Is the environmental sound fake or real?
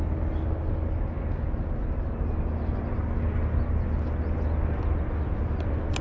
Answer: real